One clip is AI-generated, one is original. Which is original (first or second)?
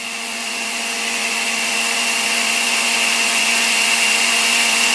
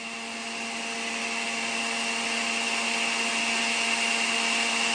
second